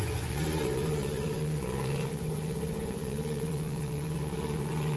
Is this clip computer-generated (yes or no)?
yes